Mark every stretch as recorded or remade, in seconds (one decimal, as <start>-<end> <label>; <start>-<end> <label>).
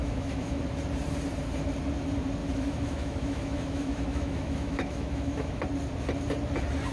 0.0-0.6 remade; 0.6-2.4 recorded; 2.4-5.6 remade; 5.6-6.9 recorded